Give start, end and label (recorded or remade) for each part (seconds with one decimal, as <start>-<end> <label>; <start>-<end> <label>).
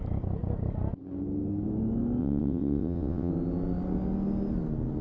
0.0-2.2 recorded; 2.2-3.3 remade; 3.3-5.0 recorded